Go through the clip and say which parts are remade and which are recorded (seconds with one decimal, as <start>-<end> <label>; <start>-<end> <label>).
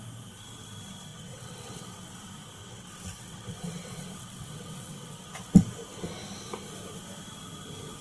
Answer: 0.0-1.1 recorded; 1.1-2.1 remade; 2.1-2.6 recorded; 2.6-5.5 remade; 5.5-8.0 recorded